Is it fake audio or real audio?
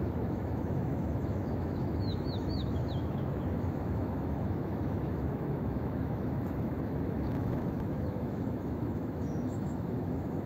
fake